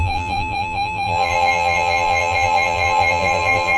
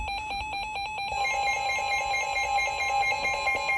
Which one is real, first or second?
second